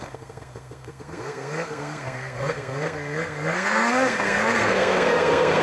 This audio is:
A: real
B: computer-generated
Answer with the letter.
B